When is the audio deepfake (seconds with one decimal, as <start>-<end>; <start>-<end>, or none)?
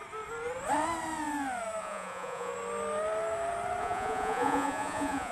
1.8-2.5; 3.8-5.3